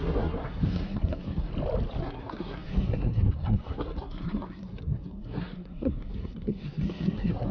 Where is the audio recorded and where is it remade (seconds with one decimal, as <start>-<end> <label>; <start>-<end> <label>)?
0.0-1.5 remade; 1.5-2.0 recorded; 2.0-7.5 remade